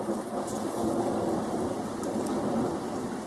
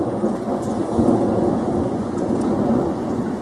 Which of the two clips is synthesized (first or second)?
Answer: second